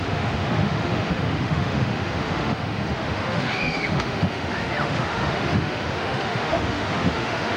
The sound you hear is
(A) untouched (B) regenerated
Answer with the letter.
B